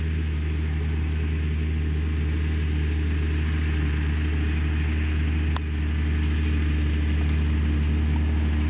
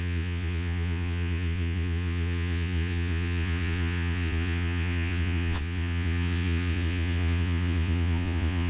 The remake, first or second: second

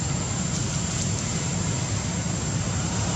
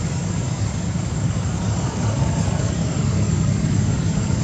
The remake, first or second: second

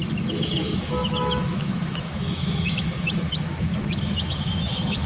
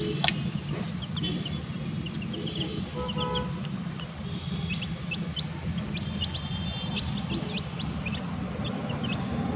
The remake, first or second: first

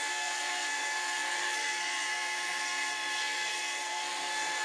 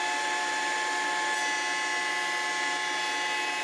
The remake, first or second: first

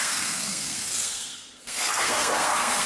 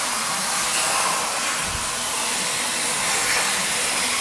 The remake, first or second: first